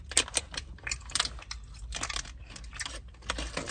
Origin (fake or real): real